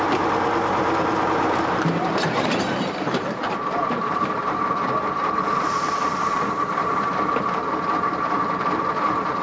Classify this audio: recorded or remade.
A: remade